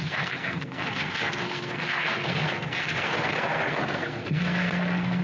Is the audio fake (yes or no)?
yes